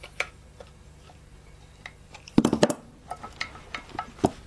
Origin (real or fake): fake